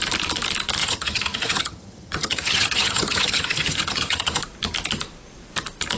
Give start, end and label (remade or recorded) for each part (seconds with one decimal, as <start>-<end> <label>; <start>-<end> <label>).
0.0-0.8 recorded; 0.8-4.4 remade; 4.4-6.0 recorded

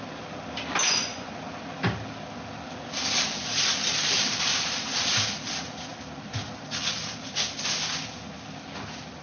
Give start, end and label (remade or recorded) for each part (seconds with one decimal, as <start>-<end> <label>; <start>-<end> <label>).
0.0-0.8 recorded; 0.8-1.3 remade; 1.3-9.2 recorded

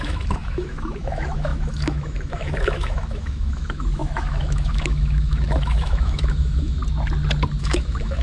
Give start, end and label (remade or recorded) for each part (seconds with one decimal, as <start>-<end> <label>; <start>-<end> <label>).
0.0-6.8 remade; 6.8-7.6 recorded; 7.6-8.2 remade

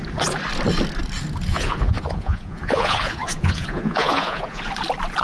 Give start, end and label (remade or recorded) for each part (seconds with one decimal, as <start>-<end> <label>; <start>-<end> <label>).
0.0-1.5 recorded; 1.5-4.6 remade; 4.6-5.2 recorded

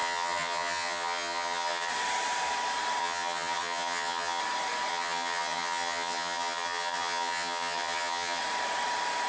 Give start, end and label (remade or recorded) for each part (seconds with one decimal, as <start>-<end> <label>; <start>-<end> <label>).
0.0-1.9 remade; 1.9-3.0 recorded; 3.0-4.4 remade; 4.4-4.9 recorded; 4.9-8.4 remade; 8.4-9.3 recorded